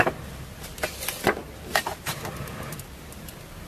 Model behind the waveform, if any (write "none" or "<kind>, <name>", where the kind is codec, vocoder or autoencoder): none